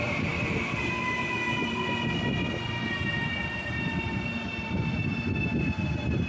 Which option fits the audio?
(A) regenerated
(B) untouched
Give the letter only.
B